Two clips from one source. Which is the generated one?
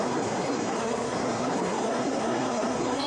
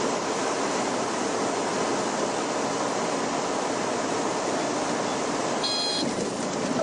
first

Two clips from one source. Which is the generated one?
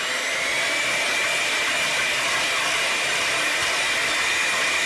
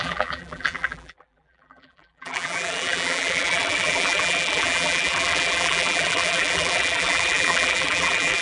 second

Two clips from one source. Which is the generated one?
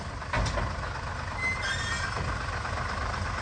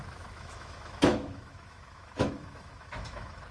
second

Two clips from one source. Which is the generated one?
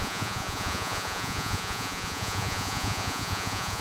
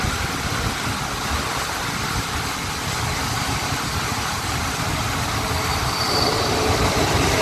first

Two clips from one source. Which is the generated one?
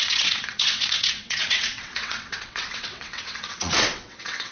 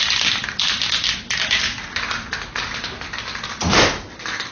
first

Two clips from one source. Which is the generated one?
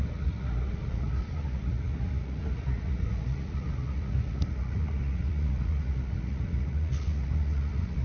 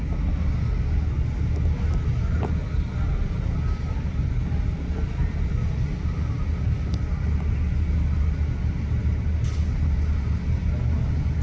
first